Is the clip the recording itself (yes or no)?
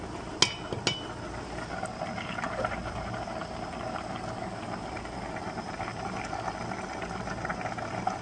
yes